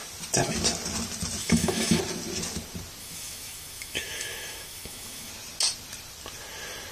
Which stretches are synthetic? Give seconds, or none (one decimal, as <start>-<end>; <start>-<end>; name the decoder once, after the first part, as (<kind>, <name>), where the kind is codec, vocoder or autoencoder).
1.4-2.0 (autoencoder, DAC-VAE); 3.0-5.3